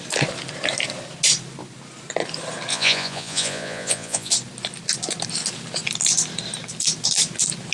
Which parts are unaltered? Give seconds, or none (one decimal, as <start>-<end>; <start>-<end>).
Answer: 0.0-2.7; 4.3-7.7

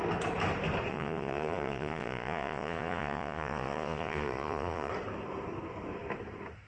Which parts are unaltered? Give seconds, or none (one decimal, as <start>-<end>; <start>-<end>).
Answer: 0.0-0.9; 4.9-6.7

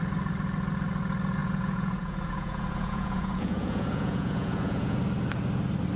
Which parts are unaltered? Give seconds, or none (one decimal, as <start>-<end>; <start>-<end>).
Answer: 0.0-1.4; 5.0-6.0

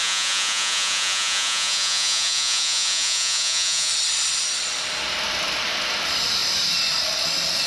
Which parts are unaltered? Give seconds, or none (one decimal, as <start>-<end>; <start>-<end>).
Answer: 3.9-7.7

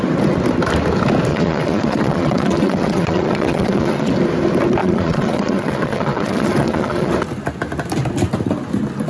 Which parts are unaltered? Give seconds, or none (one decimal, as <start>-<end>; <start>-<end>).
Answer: 0.0-1.3; 4.1-4.8; 7.1-9.1